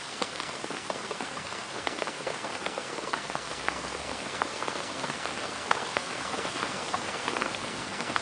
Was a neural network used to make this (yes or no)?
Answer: yes